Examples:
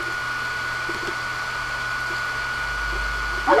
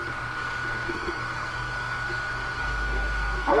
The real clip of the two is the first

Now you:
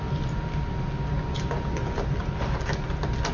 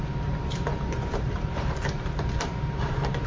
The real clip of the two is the first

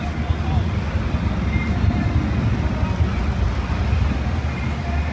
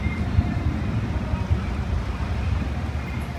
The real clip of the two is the first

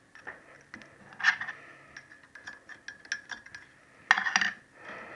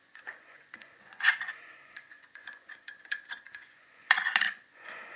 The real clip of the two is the first